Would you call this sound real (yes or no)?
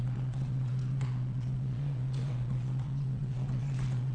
no